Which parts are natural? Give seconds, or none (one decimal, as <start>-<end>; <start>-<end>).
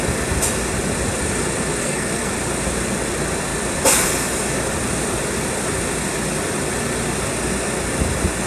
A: 0.0-1.8; 2.3-8.5